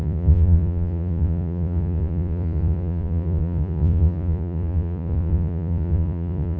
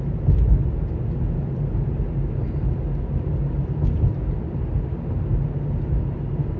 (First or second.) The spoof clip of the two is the first